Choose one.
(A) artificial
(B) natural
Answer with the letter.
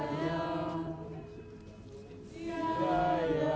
B